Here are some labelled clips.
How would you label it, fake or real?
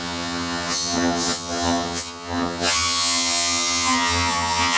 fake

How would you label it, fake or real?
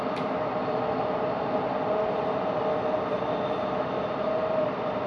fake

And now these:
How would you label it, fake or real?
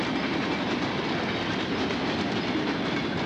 real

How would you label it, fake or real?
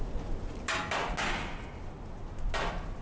real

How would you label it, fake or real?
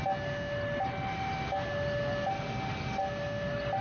real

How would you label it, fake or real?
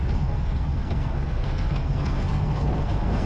fake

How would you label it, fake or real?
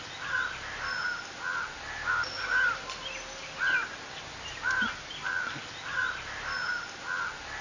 real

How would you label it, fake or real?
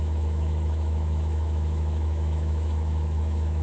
fake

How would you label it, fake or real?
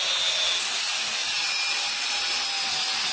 real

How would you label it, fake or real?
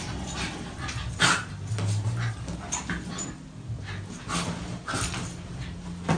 real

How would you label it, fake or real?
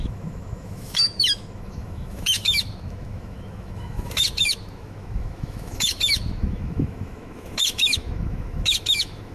fake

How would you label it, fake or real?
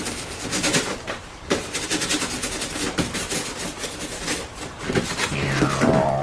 real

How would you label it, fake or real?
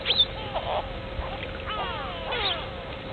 real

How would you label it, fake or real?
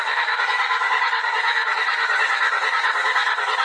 fake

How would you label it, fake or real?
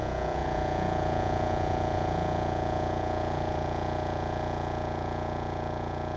fake